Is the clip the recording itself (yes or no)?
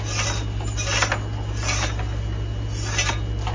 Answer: yes